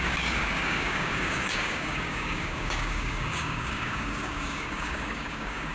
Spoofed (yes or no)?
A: yes